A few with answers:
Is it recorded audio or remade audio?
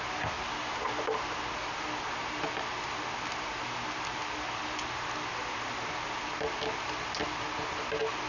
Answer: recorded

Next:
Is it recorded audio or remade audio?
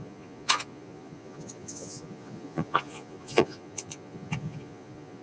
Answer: remade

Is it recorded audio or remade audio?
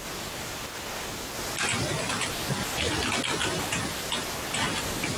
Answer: recorded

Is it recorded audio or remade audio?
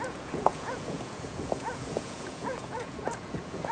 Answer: remade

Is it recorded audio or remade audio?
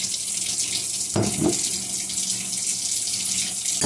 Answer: recorded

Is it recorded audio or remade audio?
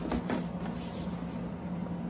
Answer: recorded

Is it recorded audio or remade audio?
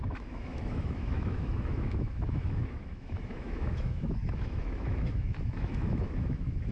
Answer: remade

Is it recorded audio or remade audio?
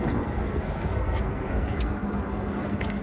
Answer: remade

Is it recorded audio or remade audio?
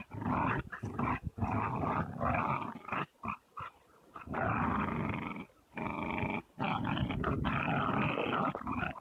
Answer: recorded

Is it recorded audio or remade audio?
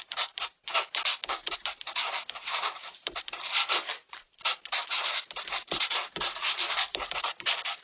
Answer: remade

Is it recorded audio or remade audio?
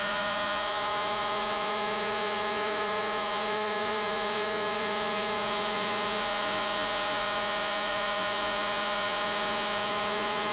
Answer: remade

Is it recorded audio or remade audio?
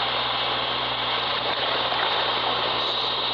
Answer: recorded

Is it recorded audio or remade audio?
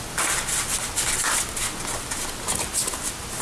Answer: recorded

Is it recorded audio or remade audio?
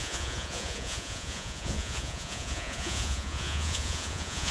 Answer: remade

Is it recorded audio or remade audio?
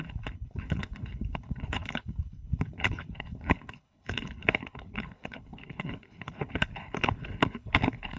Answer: remade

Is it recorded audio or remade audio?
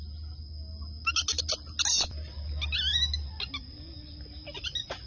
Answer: recorded